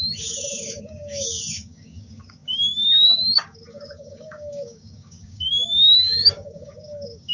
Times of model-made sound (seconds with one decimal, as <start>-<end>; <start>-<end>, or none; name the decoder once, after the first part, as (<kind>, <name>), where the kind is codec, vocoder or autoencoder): 0.0-7.3 (codec, DAC)